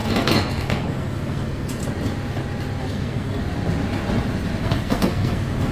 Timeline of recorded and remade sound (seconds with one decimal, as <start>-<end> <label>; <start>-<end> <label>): 0.0-1.8 remade; 1.8-2.8 recorded; 2.8-3.4 remade; 3.4-4.6 recorded; 4.6-5.7 remade